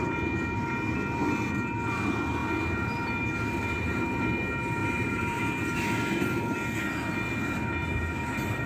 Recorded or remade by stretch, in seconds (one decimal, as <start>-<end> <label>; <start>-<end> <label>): 0.0-4.8 recorded; 4.8-5.4 remade; 5.4-7.8 recorded; 7.8-8.7 remade